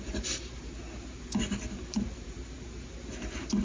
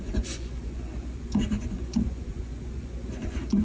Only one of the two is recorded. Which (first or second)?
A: first